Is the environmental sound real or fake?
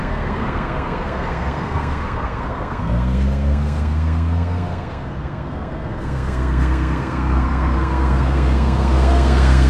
fake